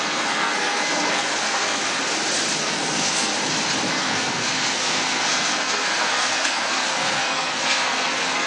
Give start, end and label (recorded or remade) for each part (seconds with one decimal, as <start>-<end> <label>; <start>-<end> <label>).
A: 0.0-1.8 remade; 1.8-2.6 recorded; 2.6-3.3 remade; 3.3-3.9 recorded; 3.9-8.5 remade